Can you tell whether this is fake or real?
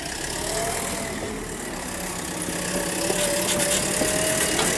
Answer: real